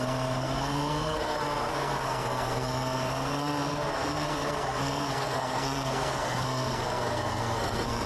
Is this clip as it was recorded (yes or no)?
no